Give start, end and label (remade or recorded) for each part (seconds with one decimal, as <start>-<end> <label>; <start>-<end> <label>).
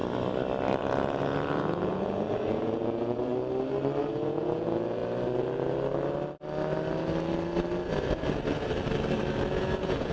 0.0-0.8 recorded; 0.8-3.3 remade; 3.3-4.0 recorded; 4.0-5.0 remade; 5.0-9.5 recorded; 9.5-10.1 remade